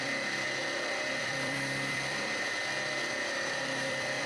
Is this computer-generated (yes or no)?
yes